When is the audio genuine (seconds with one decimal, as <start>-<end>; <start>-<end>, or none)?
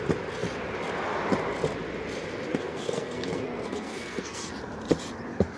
0.0-2.5; 4.5-5.6